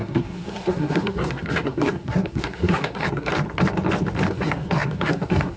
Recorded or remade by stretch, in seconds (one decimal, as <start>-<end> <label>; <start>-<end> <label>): 0.0-3.3 remade; 3.3-4.3 recorded; 4.3-5.6 remade